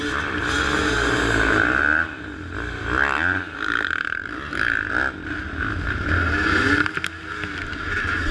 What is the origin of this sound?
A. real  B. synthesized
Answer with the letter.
A